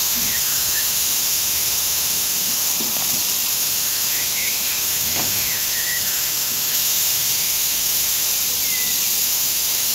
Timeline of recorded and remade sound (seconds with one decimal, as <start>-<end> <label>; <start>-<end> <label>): 0.0-2.7 remade; 2.7-3.5 recorded; 3.5-8.3 remade; 8.3-9.2 recorded; 9.2-9.9 remade